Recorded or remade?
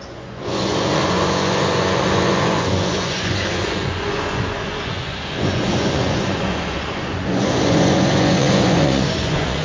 remade